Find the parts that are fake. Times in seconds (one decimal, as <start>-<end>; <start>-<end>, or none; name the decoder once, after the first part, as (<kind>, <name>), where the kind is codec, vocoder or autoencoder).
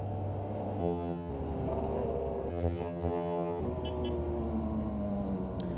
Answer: 0.8-1.3 (vocoder, HiFi-GAN); 2.5-3.6